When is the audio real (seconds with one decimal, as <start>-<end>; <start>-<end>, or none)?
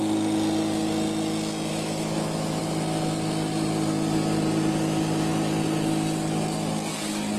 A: 0.0-1.7; 2.6-7.4